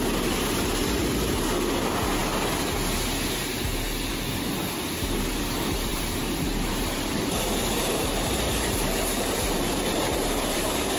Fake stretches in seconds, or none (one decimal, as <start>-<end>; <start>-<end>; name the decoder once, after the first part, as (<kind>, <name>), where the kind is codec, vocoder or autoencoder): 5.9-11.0 (vocoder, BigVGAN v2)